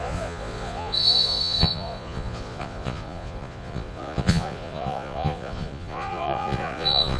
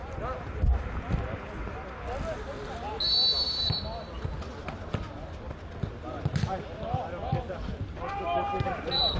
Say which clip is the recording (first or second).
second